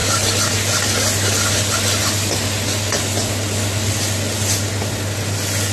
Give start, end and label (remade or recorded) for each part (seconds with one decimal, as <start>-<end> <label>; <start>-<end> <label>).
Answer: 0.0-5.7 recorded